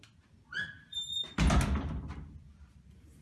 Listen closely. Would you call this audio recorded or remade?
recorded